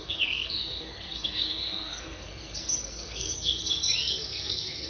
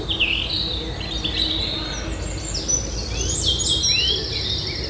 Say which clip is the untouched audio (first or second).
second